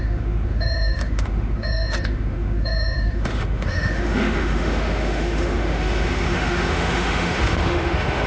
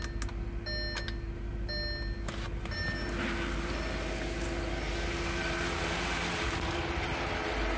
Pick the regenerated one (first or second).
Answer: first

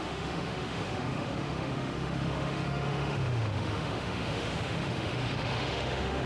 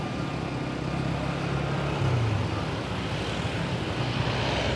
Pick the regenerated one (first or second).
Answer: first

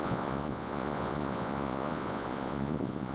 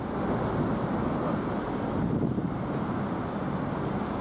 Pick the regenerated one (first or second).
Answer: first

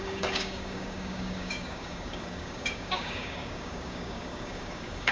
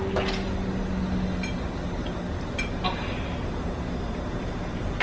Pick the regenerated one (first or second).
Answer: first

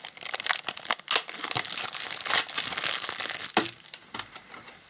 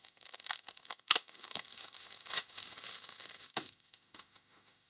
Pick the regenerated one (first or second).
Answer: second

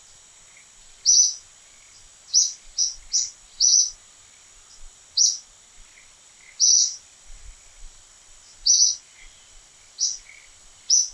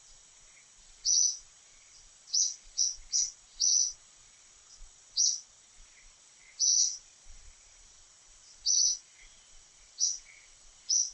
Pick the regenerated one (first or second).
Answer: second